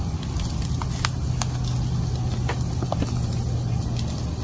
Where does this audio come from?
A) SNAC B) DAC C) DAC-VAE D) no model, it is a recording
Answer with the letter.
D